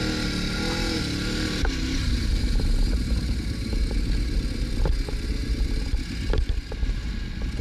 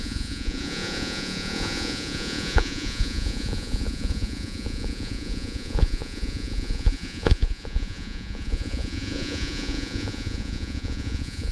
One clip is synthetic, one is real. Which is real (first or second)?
first